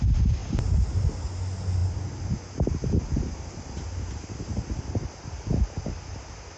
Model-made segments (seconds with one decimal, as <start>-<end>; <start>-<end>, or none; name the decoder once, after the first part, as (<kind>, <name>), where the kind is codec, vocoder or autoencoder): none